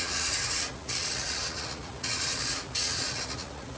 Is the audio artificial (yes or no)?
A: yes